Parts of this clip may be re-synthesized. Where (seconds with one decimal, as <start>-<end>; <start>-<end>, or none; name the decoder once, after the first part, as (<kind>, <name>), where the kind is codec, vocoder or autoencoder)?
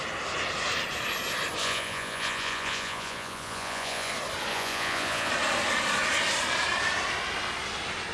1.6-4.1 (vocoder, Vocos); 4.5-5.3